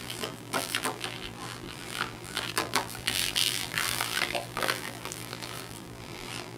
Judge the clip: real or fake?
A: fake